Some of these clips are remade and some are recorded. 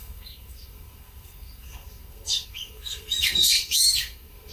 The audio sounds remade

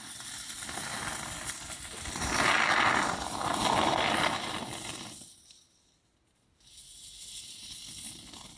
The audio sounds recorded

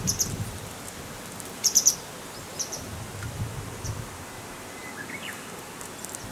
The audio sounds recorded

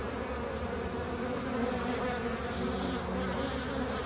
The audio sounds recorded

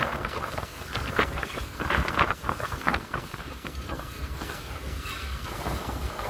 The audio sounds remade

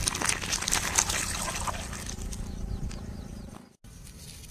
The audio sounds recorded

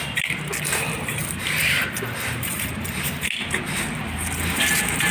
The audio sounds recorded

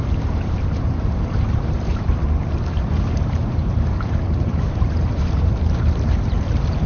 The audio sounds remade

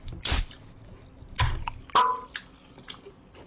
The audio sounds recorded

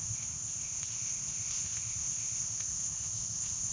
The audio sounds remade